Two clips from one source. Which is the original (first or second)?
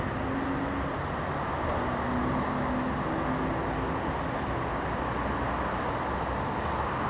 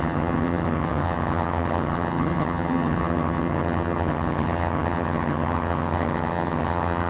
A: first